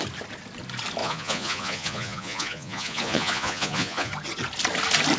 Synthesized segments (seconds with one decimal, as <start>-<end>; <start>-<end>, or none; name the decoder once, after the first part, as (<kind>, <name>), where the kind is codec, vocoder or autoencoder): 1.0-4.1 (vocoder, Vocos)